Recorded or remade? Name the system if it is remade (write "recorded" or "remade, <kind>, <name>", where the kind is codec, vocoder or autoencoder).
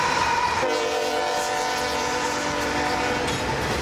recorded